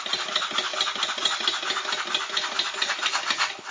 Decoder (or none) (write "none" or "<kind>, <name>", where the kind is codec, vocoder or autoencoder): none